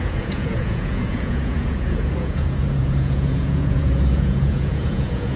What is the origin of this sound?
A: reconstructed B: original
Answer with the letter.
A